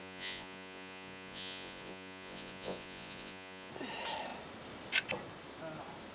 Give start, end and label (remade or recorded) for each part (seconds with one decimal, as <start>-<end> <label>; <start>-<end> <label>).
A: 0.0-3.7 remade; 3.7-6.1 recorded